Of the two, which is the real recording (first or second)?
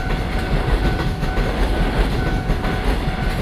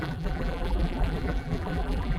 first